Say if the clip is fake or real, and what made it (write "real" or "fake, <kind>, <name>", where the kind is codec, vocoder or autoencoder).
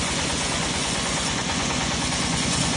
fake, vocoder, Vocos